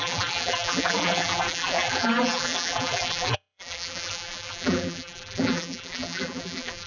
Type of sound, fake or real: fake